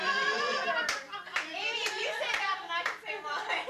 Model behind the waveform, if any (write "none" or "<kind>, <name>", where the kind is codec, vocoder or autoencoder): none